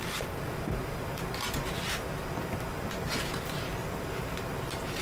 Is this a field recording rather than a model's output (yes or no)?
yes